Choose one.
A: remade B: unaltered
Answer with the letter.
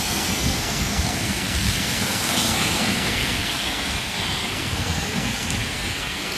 A